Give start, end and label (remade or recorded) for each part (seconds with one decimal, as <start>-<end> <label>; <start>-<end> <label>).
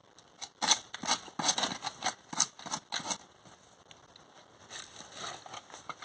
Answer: 0.0-6.0 recorded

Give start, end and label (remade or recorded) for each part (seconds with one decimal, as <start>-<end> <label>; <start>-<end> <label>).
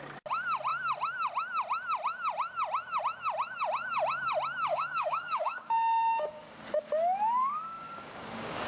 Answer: 0.0-4.7 recorded; 4.7-6.5 remade; 6.5-7.4 recorded; 7.4-8.7 remade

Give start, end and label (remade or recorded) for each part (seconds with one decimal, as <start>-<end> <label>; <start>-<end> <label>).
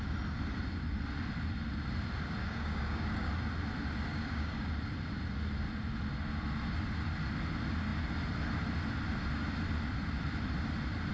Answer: 0.0-2.4 recorded; 2.4-3.3 remade; 3.3-4.1 recorded; 4.1-4.7 remade; 4.7-11.1 recorded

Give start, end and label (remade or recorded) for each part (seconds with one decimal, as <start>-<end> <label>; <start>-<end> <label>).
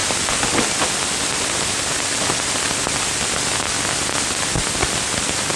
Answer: 0.0-5.6 recorded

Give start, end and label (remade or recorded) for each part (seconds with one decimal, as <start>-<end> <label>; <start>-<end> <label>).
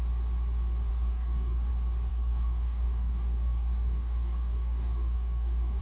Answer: 0.0-0.9 recorded; 0.9-1.7 remade; 1.7-2.1 recorded; 2.1-5.8 remade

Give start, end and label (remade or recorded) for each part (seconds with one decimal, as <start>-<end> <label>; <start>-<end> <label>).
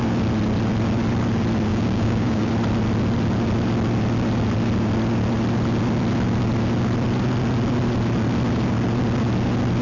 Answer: 0.0-1.7 recorded; 1.7-2.5 remade; 2.5-9.8 recorded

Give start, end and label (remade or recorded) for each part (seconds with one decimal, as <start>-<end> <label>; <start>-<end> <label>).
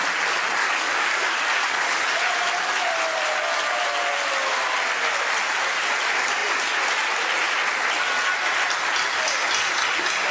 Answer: 0.0-0.6 recorded; 0.6-2.2 remade; 2.2-10.3 recorded